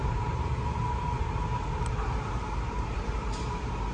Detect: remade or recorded remade